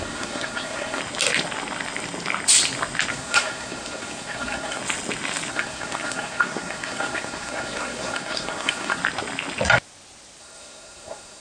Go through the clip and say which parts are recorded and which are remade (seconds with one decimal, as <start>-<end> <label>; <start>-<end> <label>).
0.0-1.0 remade; 1.0-3.1 recorded; 3.1-4.8 remade; 4.8-5.5 recorded; 5.5-9.0 remade; 9.0-10.4 recorded; 10.4-11.4 remade